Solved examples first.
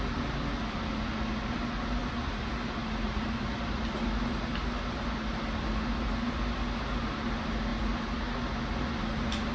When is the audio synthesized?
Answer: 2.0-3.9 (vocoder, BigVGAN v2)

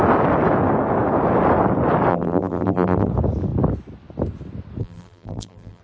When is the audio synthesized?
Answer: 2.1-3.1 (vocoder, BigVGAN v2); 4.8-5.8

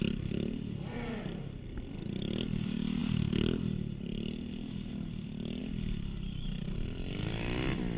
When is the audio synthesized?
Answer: none